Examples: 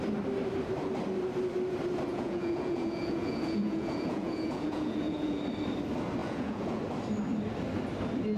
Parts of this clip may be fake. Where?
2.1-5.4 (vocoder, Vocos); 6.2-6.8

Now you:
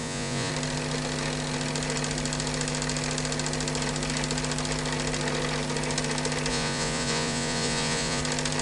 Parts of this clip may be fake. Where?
0.0-0.5 (vocoder, Vocos); 6.5-8.2

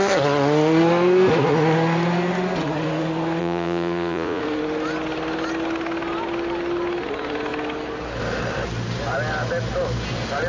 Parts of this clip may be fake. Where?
3.4-4.4 (vocoder, Vocos)

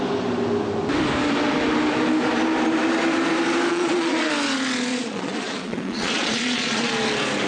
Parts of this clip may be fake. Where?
3.7-4.3 (vocoder, Vocos); 4.9-6.9